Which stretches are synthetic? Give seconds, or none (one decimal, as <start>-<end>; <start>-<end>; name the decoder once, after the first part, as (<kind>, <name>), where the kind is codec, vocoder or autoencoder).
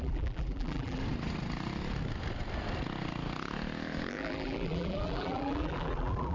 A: 0.0-1.0 (vocoder, BigVGAN v2); 4.1-6.3